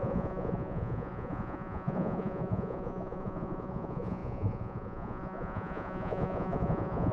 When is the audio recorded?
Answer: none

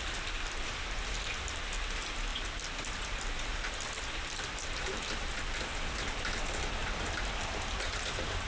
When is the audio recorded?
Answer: 0.0-8.5

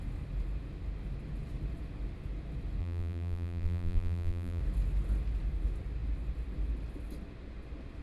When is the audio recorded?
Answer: 0.0-2.8; 4.6-8.0

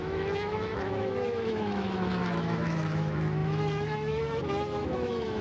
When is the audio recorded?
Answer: none

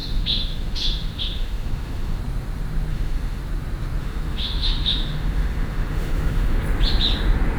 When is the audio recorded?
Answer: 2.2-2.9; 3.4-4.0; 6.6-7.6

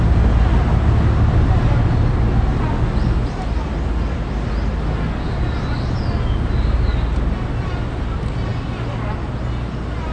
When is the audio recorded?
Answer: 0.0-10.1